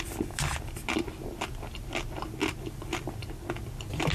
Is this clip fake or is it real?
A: real